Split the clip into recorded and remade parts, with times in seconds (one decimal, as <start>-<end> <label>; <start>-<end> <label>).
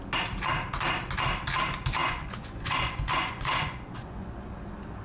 0.0-2.0 recorded; 2.0-4.6 remade; 4.6-5.0 recorded